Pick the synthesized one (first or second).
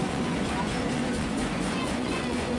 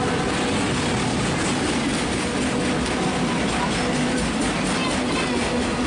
first